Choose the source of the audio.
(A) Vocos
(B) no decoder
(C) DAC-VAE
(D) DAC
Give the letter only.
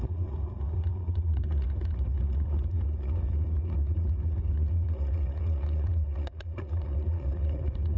A